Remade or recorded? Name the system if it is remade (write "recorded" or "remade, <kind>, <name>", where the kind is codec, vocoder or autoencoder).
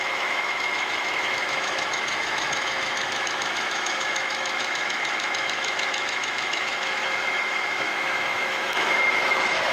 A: remade, autoencoder, DAC-VAE